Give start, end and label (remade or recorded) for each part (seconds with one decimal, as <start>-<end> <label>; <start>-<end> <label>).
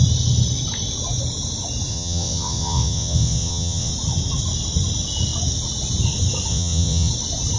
0.0-1.9 recorded; 1.9-3.9 remade; 3.9-6.5 recorded; 6.5-7.1 remade; 7.1-7.6 recorded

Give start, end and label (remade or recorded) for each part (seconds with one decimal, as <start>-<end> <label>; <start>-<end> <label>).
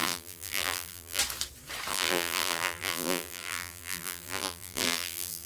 0.0-1.2 remade; 1.2-1.9 recorded; 1.9-5.5 remade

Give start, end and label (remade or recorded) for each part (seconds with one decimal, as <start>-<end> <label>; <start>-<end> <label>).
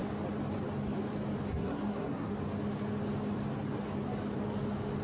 0.0-1.5 recorded; 1.5-2.3 remade; 2.3-5.0 recorded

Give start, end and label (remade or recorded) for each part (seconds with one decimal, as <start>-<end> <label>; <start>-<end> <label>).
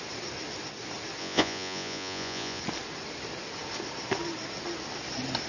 0.0-1.2 recorded; 1.2-2.6 remade; 2.6-5.5 recorded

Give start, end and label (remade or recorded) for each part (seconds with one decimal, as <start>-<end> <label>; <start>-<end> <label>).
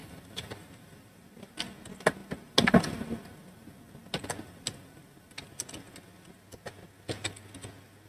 0.0-1.5 remade; 1.5-8.1 recorded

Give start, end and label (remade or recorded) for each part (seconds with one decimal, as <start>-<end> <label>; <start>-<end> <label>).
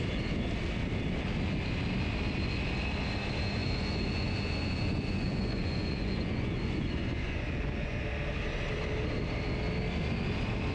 0.0-3.6 recorded; 3.6-8.0 remade; 8.0-10.7 recorded